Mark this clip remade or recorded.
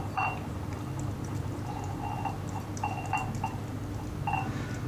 recorded